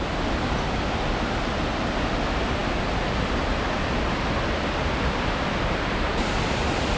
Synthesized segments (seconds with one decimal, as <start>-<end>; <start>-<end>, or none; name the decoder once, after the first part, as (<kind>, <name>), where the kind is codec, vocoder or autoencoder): none